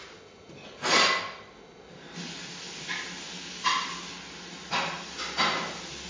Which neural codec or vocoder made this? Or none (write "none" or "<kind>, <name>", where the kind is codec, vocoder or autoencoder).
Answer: none